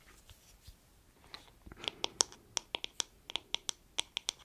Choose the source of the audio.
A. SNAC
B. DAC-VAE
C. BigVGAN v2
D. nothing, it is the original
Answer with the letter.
D